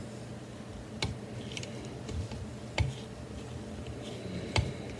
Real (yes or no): yes